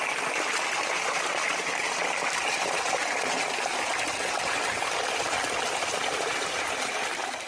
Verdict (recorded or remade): remade